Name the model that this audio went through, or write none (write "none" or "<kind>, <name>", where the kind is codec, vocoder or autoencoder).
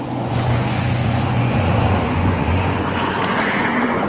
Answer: vocoder, Vocos